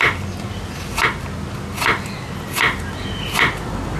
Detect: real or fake real